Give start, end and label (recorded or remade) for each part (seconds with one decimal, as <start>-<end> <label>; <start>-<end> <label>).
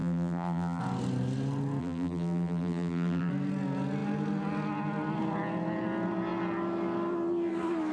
0.0-0.8 remade; 0.8-1.8 recorded; 1.8-3.3 remade; 3.3-7.9 recorded